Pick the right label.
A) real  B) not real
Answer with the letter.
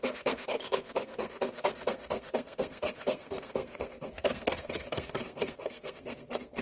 B